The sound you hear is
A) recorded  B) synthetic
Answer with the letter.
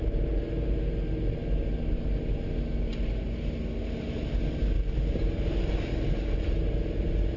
A